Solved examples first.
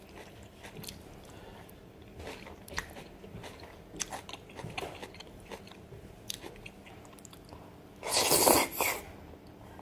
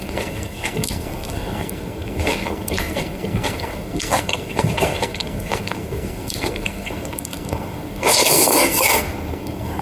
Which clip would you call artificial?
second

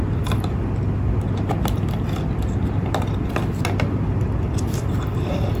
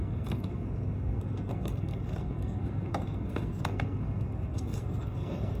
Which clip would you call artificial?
second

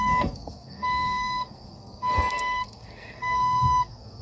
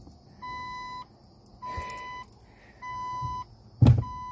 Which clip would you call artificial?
first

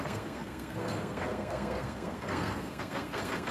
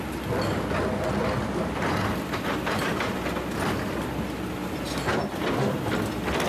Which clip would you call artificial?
first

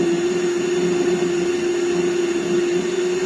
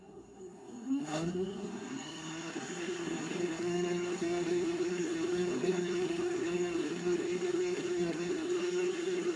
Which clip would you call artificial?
second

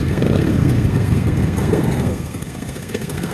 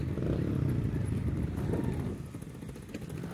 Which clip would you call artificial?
first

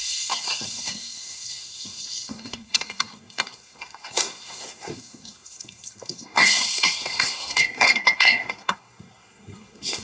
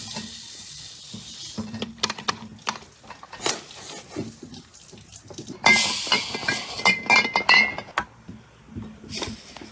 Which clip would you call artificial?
first